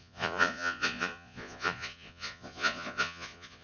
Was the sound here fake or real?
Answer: fake